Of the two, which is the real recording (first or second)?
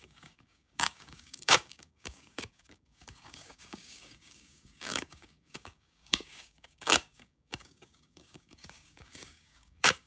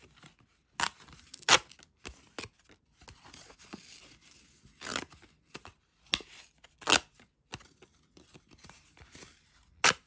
second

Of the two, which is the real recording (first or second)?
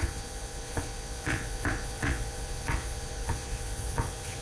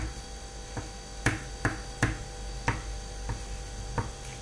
second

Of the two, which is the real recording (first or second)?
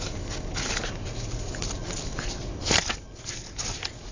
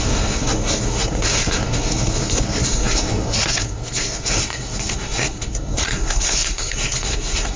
first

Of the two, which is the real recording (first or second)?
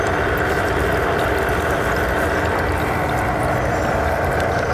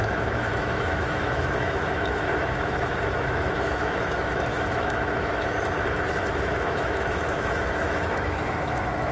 first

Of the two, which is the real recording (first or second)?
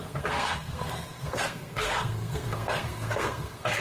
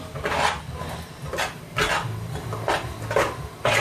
second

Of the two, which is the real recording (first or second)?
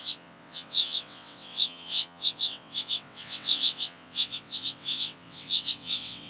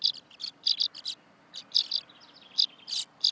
second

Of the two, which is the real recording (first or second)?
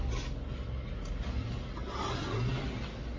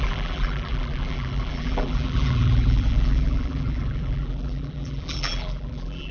first